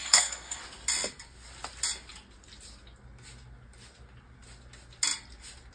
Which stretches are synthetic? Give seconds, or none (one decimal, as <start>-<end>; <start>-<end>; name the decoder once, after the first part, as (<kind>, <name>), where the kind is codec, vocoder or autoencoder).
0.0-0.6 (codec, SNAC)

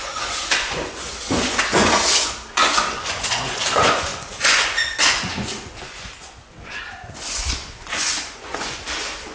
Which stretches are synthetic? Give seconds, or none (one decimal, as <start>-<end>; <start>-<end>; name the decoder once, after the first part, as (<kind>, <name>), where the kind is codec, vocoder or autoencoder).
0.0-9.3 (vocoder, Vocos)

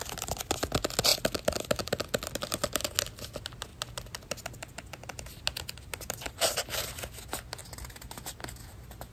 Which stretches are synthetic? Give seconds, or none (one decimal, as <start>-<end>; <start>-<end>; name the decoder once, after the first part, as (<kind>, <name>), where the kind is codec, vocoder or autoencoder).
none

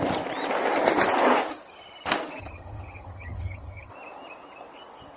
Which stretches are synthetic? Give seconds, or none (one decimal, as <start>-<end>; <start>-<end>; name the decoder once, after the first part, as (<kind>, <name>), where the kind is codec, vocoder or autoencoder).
2.4-3.9 (vocoder, HiFi-GAN)